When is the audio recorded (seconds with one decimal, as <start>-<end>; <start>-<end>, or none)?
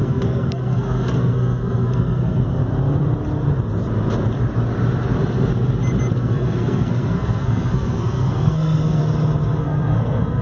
2.6-6.1; 9.0-9.6